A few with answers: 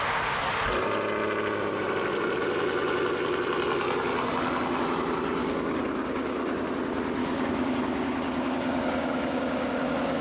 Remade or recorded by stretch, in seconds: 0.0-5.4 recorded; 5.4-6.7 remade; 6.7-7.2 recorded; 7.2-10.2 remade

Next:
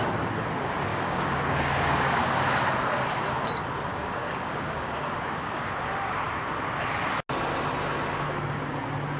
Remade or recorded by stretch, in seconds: 0.0-0.9 recorded; 0.9-2.2 remade; 2.2-3.9 recorded; 3.9-5.7 remade; 5.7-9.2 recorded

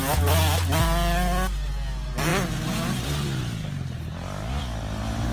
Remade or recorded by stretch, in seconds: 0.0-5.3 recorded